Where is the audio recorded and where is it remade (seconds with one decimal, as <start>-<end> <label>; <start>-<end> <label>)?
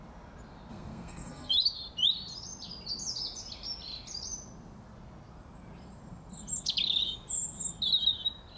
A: 0.0-0.7 recorded; 0.7-1.5 remade; 1.5-8.6 recorded